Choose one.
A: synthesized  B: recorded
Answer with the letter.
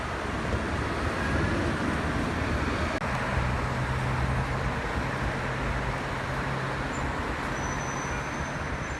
B